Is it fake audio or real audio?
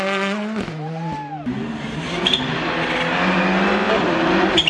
real